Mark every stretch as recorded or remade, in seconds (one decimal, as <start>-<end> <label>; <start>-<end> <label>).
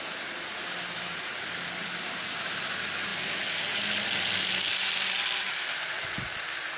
0.0-6.8 recorded